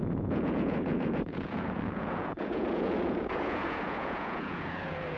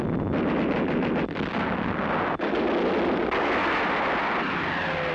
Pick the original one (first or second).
second